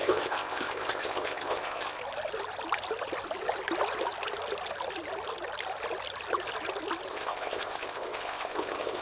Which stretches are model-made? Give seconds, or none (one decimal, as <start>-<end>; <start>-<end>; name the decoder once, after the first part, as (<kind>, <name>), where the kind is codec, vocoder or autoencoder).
0.0-2.0 (codec, ZipCodec); 7.1-9.0